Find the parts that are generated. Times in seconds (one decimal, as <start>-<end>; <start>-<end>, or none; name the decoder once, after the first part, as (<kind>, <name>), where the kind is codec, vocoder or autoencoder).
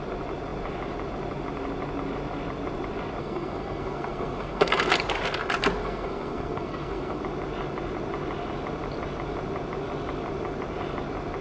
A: 3.2-4.9 (codec, SNAC); 5.8-7.2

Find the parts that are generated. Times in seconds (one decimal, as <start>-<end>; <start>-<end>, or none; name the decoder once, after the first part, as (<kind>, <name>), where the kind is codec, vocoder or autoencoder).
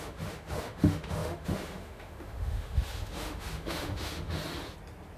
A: 0.0-4.4 (autoencoder, DAC-VAE)